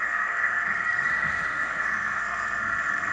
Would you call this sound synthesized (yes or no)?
yes